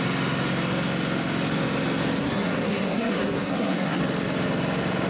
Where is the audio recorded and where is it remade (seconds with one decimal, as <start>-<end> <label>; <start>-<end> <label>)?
0.0-2.2 recorded; 2.2-4.0 remade; 4.0-5.1 recorded